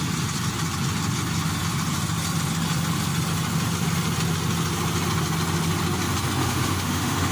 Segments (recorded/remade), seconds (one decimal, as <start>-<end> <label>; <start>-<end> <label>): 0.0-6.4 recorded; 6.4-7.3 remade